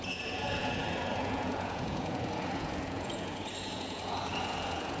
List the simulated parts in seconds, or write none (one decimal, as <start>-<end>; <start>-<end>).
0.0-5.0

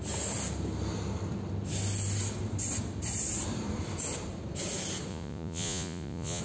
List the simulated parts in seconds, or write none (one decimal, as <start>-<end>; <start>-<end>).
5.1-6.4

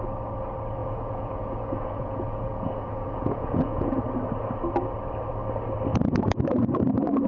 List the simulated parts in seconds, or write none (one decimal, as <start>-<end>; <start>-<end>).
0.8-4.0; 5.9-6.6

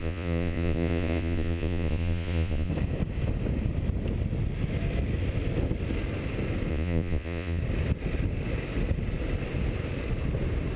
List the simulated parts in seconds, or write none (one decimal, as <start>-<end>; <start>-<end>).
0.0-2.7; 6.7-7.6

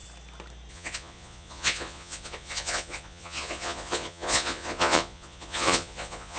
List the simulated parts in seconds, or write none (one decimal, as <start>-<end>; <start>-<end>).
0.7-6.4